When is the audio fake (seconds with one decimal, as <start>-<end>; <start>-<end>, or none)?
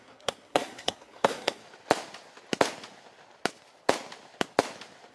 0.0-1.6